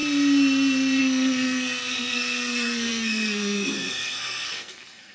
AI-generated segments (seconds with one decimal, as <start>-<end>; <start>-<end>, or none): 1.0-5.1